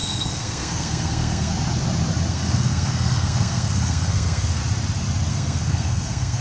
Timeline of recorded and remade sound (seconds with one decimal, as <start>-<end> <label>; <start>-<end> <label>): 0.0-1.5 remade; 1.5-2.3 recorded; 2.3-4.6 remade; 4.6-5.3 recorded; 5.3-6.4 remade